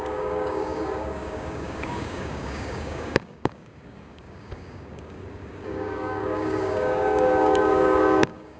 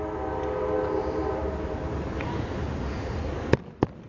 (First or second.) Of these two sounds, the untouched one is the second